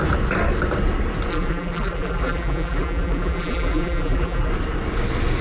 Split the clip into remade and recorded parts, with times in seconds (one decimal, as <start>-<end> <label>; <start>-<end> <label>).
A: 0.0-1.3 recorded; 1.3-4.5 remade; 4.5-5.4 recorded